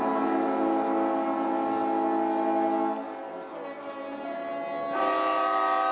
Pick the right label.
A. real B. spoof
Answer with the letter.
A